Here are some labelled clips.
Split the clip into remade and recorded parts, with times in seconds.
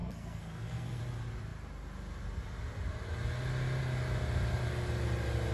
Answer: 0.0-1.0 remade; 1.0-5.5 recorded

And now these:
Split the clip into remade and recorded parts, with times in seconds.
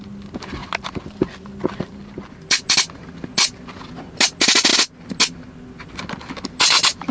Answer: 0.0-7.1 recorded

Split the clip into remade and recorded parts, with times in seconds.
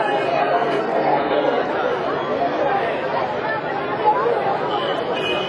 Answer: 0.0-0.4 recorded; 0.4-1.7 remade; 1.7-5.5 recorded